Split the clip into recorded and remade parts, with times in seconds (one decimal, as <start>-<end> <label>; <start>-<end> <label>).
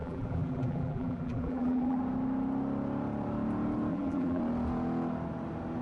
0.0-2.0 remade; 2.0-3.9 recorded; 3.9-4.4 remade; 4.4-5.8 recorded